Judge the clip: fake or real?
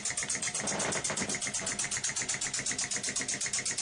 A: real